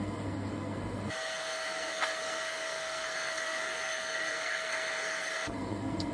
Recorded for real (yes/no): no